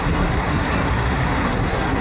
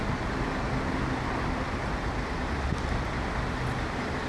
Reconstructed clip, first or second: first